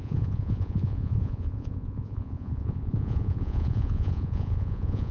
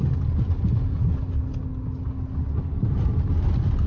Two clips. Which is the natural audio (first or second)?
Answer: second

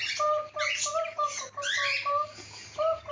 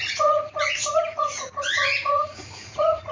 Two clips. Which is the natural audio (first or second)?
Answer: first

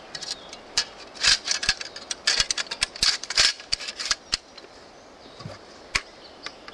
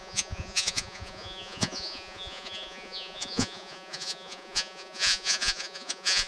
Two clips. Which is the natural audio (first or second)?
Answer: first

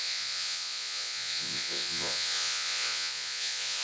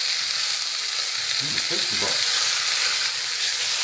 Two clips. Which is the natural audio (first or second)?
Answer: second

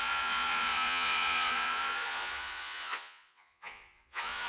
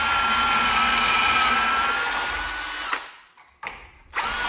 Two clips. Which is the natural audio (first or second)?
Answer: second